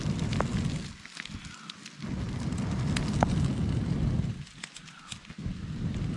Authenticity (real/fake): real